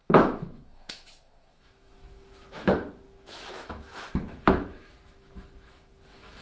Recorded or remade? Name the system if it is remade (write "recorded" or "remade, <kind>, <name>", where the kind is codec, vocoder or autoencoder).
remade, autoencoder, DAC-VAE